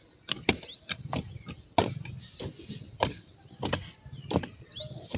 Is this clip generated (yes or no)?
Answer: no